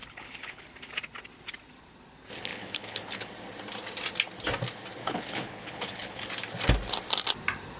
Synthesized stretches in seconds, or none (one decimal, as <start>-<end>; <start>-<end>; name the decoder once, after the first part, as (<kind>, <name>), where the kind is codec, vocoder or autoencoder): 0.0-0.6 (codec, HILCodec); 2.5-3.3; 5.0-6.3